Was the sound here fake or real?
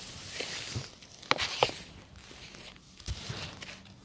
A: real